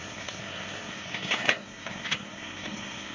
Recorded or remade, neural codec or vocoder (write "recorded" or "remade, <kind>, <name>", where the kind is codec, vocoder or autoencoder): remade, codec, SNAC